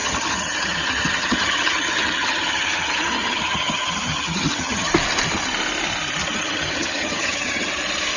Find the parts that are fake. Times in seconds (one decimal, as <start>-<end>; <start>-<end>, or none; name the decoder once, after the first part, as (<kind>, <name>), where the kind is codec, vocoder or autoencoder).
0.0-4.9 (vocoder, HiFi-GAN); 6.2-7.7